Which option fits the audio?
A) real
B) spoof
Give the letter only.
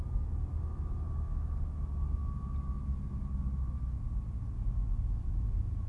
A